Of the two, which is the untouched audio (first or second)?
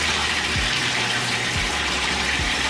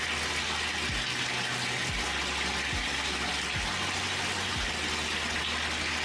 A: second